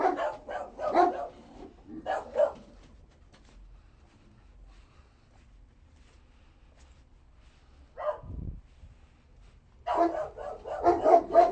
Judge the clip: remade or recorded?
recorded